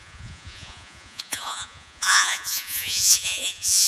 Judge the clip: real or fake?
fake